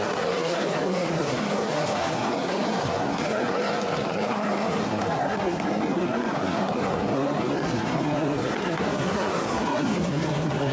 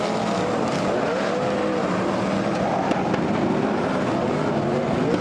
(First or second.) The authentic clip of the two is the second